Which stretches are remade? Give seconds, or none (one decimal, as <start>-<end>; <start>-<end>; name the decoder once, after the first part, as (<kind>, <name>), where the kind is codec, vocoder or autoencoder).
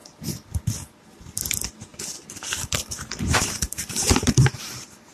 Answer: 1.9-5.1 (vocoder, BigVGAN v2)